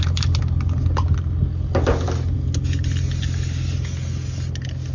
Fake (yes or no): no